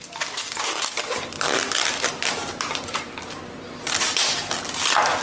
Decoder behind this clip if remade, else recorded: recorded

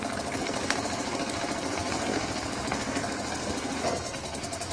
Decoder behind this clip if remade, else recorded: remade, codec, SNAC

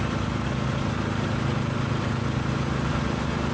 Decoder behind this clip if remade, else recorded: recorded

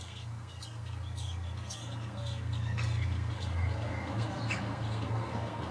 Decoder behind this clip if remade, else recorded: remade, codec, SNAC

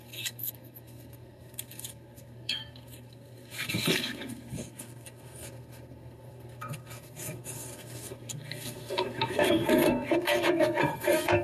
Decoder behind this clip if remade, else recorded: remade, codec, SNAC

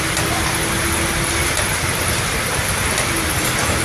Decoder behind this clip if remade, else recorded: recorded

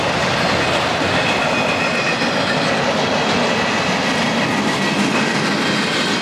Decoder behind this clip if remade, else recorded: recorded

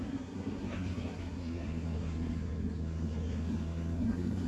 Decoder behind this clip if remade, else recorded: remade, codec, SNAC